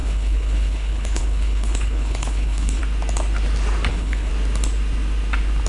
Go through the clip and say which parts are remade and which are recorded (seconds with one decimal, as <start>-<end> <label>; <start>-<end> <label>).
0.0-2.8 remade; 2.8-3.9 recorded; 3.9-4.3 remade; 4.3-5.7 recorded